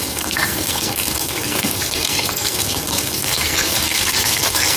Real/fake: fake